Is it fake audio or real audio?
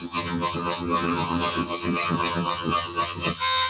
fake